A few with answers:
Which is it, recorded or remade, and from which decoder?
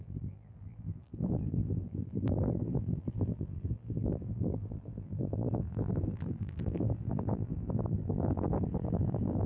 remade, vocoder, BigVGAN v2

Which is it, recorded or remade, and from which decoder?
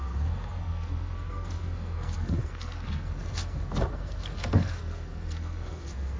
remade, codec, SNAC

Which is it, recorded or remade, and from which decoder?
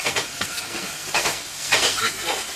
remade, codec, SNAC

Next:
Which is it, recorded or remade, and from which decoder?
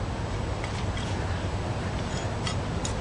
recorded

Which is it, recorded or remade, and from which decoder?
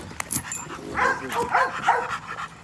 recorded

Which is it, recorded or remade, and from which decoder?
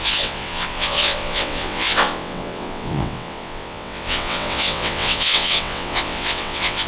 remade, vocoder, WaveNeXt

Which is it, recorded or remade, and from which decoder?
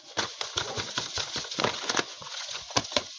remade, vocoder, Vocos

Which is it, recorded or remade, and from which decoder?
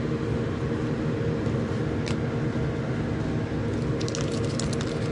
recorded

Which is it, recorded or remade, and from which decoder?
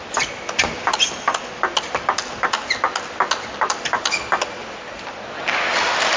recorded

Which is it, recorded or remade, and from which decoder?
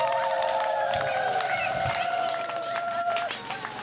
recorded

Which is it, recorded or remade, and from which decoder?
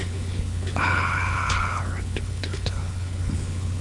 remade, codec, HILCodec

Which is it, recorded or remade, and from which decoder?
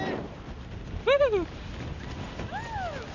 recorded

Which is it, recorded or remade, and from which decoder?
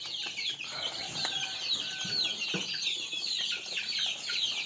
recorded